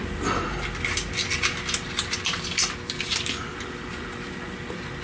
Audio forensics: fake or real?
real